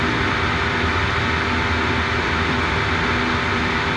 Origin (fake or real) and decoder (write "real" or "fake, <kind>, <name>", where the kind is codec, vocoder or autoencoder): real